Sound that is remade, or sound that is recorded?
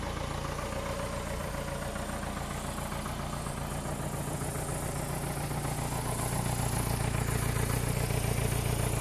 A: recorded